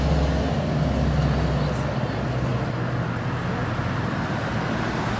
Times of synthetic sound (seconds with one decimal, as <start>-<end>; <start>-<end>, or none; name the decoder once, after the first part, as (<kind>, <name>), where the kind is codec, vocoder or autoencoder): none